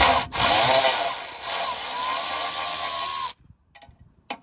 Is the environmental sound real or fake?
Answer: real